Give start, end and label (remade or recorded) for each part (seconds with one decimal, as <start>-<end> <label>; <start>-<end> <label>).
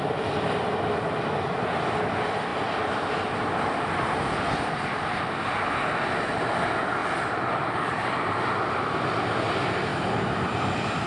0.0-2.5 recorded; 2.5-4.4 remade; 4.4-7.0 recorded; 7.0-8.0 remade; 8.0-9.9 recorded; 9.9-11.1 remade